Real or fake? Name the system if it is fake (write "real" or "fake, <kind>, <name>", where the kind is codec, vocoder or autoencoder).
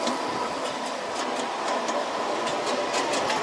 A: real